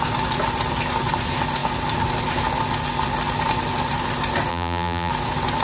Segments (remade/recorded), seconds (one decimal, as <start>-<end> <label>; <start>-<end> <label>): 0.0-4.5 recorded; 4.5-5.1 remade; 5.1-5.6 recorded